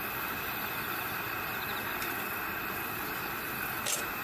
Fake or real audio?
real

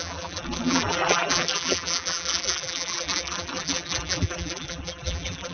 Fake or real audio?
fake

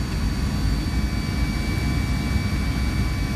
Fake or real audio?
real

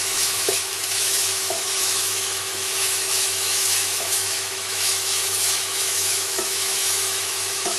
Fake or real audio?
fake